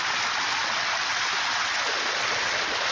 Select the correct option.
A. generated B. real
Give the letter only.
B